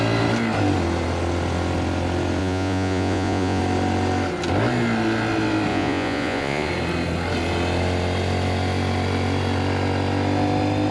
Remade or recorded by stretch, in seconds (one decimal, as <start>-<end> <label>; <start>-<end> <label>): 0.0-2.4 recorded; 2.4-3.6 remade; 3.6-5.7 recorded; 5.7-6.7 remade; 6.7-10.9 recorded